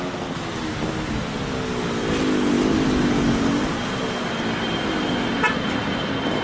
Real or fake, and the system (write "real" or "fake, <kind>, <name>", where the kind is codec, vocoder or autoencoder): real